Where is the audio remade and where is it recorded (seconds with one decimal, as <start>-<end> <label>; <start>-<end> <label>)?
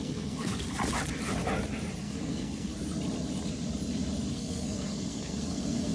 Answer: 0.0-0.5 remade; 0.5-2.0 recorded; 2.0-2.7 remade; 2.7-4.3 recorded; 4.3-5.9 remade